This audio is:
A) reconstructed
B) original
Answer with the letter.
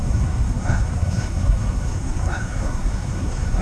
A